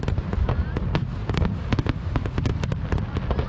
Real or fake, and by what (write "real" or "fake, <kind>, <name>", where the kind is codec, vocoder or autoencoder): real